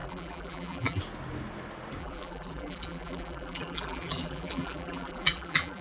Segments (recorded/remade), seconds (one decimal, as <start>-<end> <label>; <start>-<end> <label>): 0.0-1.0 remade; 1.0-2.0 recorded; 2.0-5.8 remade